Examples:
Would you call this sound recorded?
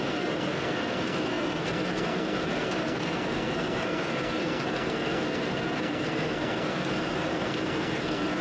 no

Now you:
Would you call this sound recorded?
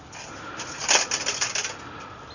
yes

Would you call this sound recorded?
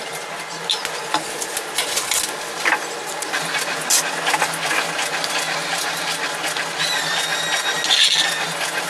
yes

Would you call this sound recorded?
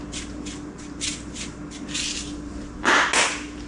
yes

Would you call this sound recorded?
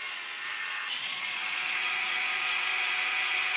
no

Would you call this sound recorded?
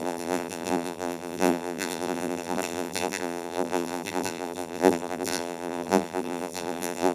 no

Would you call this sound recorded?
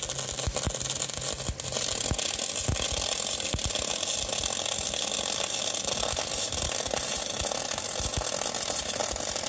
yes